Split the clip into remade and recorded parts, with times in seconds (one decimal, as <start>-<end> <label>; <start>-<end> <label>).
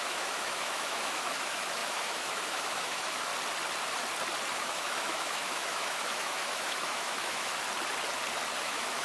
0.0-3.3 remade; 3.3-4.5 recorded; 4.5-7.5 remade; 7.5-8.6 recorded; 8.6-9.0 remade